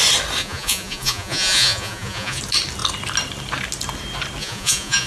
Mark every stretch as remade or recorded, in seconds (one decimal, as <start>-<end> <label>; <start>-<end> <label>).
0.0-0.4 recorded; 0.4-2.4 remade; 2.4-4.4 recorded; 4.4-5.1 remade